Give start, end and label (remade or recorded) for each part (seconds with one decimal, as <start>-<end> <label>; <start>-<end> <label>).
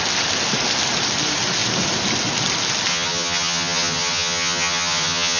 0.0-2.9 recorded; 2.9-5.4 remade